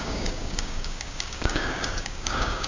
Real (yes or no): no